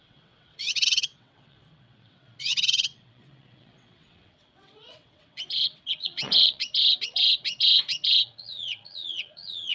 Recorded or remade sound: remade